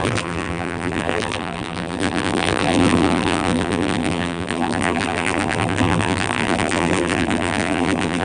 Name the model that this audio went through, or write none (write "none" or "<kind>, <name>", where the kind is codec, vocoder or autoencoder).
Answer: vocoder, BigVGAN v2